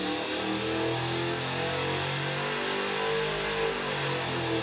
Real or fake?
real